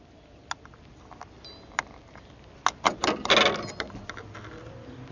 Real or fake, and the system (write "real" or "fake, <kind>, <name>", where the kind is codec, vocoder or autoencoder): real